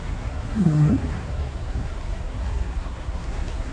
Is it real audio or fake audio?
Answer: fake